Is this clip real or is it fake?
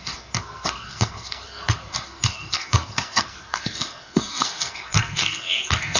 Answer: fake